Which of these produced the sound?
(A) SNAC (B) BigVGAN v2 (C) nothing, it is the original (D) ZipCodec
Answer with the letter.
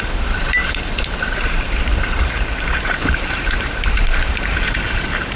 B